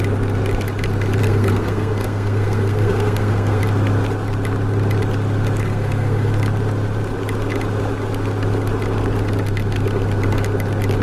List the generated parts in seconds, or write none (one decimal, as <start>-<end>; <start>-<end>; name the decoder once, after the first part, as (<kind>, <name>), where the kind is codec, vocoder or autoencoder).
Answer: 1.2-3.6 (codec, SNAC); 5.6-6.3